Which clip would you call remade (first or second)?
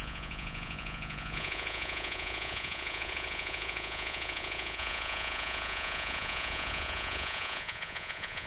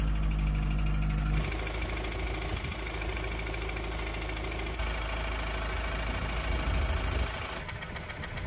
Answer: first